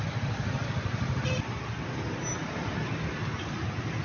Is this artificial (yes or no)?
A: no